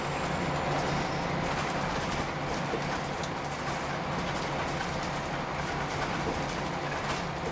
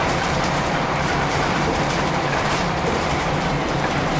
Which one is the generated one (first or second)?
second